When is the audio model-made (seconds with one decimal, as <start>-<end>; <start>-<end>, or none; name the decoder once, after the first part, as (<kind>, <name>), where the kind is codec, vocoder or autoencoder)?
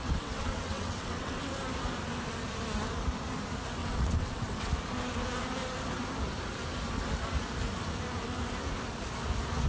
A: 0.0-1.4 (vocoder, WaveNeXt); 3.8-4.7